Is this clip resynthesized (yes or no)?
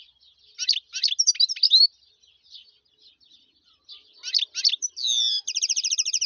no